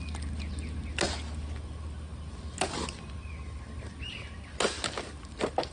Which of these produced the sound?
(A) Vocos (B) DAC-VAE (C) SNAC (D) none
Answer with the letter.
D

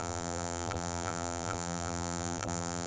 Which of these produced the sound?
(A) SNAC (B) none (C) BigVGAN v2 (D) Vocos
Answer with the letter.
C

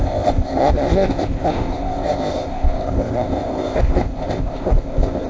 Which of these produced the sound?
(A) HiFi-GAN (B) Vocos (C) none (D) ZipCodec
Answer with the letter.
D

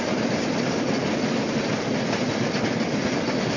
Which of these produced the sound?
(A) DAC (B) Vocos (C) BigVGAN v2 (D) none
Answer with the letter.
D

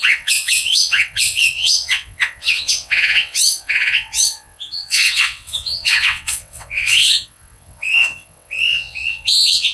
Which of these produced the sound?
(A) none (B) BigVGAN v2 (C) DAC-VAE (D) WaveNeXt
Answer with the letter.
D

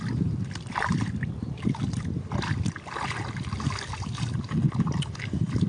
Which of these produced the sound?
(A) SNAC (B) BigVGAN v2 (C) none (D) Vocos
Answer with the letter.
C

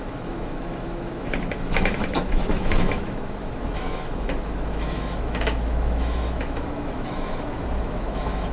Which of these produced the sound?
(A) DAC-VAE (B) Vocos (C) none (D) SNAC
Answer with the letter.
A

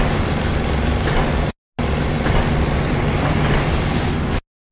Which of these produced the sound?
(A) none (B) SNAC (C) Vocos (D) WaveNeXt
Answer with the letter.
A